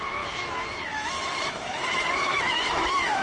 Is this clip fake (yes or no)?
yes